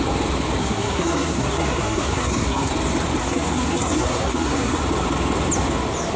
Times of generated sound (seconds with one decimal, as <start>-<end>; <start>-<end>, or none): 0.6-2.7; 3.2-4.8